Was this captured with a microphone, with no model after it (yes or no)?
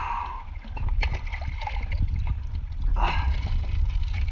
yes